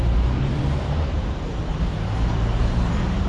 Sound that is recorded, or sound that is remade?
remade